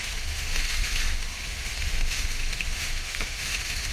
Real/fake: fake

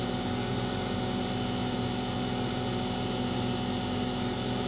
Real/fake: real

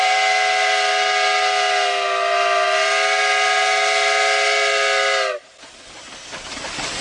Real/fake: real